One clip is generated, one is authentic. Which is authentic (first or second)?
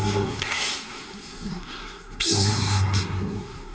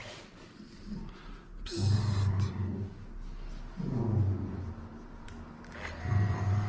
second